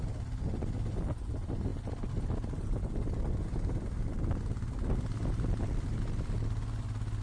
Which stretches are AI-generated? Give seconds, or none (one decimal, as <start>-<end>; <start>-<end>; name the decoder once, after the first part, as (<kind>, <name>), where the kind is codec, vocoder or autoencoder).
none